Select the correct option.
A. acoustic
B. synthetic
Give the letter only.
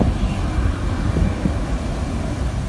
A